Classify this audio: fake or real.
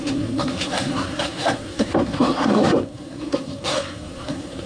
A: fake